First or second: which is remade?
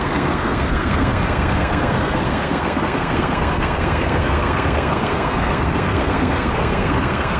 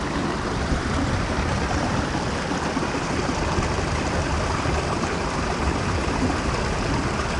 first